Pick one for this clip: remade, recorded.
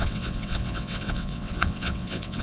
remade